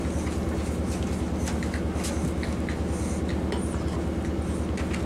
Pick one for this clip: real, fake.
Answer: real